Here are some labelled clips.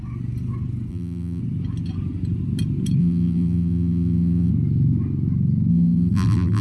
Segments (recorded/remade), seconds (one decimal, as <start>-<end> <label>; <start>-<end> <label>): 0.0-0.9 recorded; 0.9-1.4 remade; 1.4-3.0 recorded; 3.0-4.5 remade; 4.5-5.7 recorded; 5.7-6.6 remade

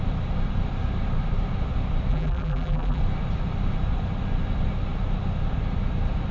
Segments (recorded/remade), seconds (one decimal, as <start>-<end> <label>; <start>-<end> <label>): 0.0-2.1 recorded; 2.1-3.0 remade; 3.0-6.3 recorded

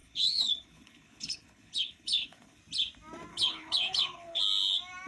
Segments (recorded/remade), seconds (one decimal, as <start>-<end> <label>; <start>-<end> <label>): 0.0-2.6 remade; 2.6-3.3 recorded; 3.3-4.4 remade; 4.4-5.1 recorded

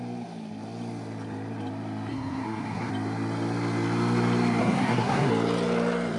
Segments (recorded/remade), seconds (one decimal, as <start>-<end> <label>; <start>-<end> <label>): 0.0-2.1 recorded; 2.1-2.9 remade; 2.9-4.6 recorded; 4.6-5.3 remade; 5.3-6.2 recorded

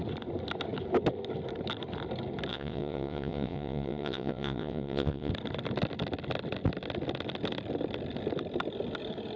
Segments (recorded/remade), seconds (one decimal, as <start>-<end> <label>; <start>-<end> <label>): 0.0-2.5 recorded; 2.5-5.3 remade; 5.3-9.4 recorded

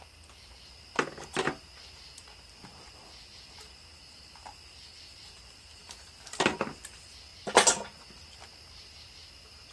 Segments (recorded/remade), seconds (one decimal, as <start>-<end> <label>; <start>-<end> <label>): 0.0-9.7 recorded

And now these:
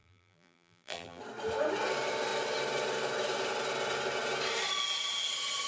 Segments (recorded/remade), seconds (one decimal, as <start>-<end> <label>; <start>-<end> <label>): 0.0-1.2 remade; 1.2-5.7 recorded

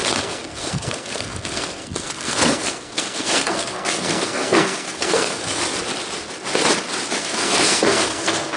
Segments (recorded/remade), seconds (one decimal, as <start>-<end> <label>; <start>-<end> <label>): 0.0-5.6 remade; 5.6-7.2 recorded; 7.2-8.6 remade